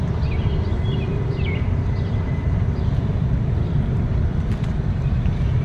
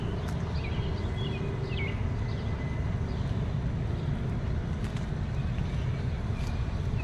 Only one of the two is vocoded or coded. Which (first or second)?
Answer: first